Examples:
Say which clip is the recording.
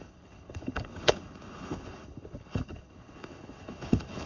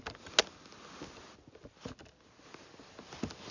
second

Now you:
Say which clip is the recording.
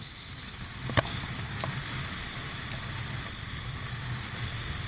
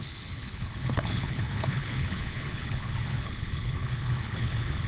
first